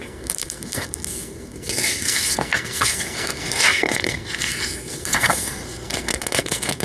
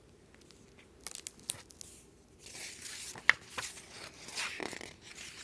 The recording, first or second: second